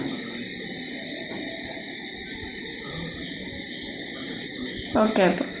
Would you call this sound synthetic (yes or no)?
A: no